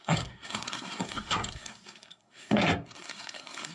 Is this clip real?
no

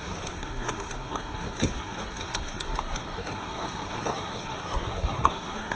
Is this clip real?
no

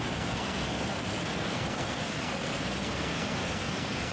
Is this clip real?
no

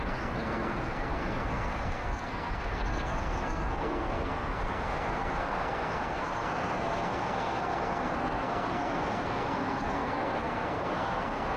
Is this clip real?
no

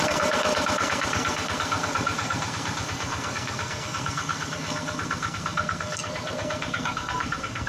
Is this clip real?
no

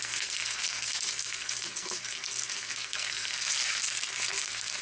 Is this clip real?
no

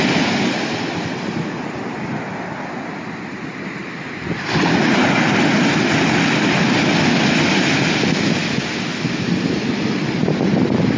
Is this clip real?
yes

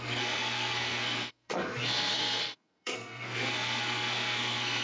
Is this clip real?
no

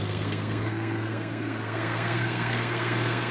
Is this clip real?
no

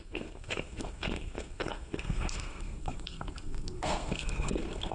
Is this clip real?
no